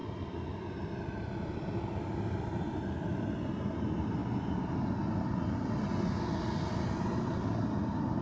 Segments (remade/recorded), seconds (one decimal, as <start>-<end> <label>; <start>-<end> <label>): 0.0-8.2 recorded